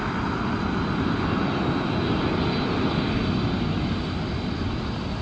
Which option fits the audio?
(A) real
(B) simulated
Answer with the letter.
A